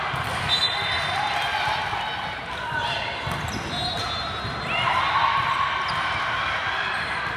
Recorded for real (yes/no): yes